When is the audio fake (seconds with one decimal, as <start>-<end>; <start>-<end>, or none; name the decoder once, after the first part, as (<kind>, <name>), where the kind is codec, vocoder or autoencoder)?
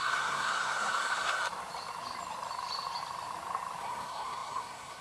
0.0-1.4 (codec, SNAC); 3.8-5.0